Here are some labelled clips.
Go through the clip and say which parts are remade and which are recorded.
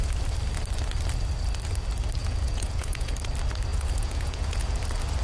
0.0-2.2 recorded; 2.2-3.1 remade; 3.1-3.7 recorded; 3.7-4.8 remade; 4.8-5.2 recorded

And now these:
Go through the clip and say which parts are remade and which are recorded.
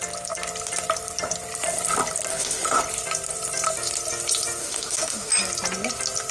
0.0-2.3 recorded; 2.3-2.8 remade; 2.8-4.6 recorded; 4.6-5.3 remade; 5.3-6.3 recorded